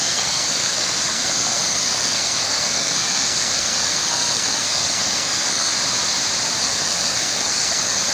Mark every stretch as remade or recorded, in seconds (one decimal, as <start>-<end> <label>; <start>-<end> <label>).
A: 0.0-5.7 remade; 5.7-6.6 recorded; 6.6-8.1 remade